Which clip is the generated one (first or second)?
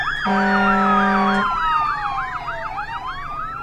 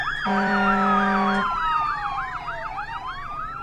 second